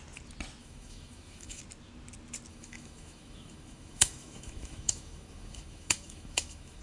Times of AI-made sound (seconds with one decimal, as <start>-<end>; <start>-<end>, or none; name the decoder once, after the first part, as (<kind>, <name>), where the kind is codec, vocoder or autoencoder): 0.6-1.6 (autoencoder, DAC-VAE); 2.5-6.8